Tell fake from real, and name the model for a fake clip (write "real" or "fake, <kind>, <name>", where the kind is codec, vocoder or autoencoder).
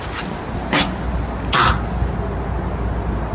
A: real